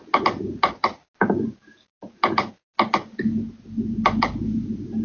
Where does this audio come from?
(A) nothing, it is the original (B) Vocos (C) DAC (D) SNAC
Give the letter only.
A